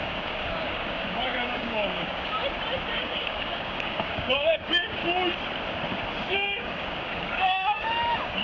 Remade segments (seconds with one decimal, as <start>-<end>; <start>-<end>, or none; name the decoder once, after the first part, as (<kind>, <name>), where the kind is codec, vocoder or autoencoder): 0.0-2.4 (codec, DAC); 2.9-5.0; 6.1-8.4